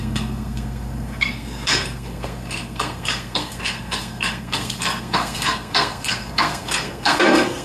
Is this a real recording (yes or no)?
no